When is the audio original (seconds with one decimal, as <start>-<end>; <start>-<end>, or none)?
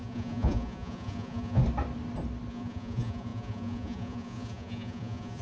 1.6-2.5